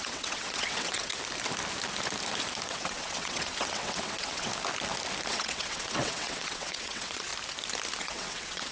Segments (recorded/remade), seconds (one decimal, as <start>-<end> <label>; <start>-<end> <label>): 0.0-1.1 remade; 1.1-2.7 recorded; 2.7-4.5 remade; 4.5-5.3 recorded; 5.3-7.3 remade; 7.3-8.0 recorded; 8.0-8.7 remade